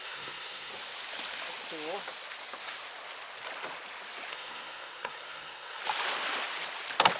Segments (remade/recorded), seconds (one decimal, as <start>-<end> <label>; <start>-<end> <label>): 0.0-0.7 remade; 0.7-4.3 recorded; 4.3-5.8 remade; 5.8-7.2 recorded